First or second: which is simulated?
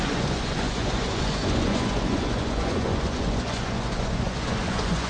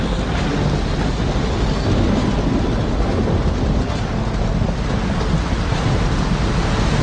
first